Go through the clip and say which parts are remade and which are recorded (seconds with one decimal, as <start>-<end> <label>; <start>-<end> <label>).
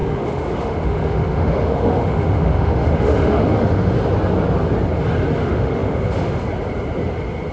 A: 0.0-3.9 remade; 3.9-5.4 recorded; 5.4-6.4 remade; 6.4-7.5 recorded